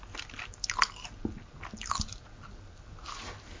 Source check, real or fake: real